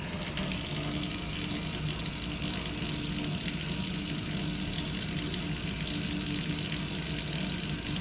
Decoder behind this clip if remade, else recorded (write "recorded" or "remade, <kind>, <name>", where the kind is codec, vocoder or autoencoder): recorded